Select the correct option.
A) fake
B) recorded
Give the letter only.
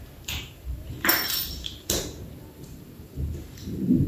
A